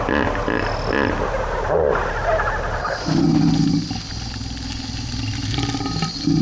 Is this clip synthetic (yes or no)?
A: no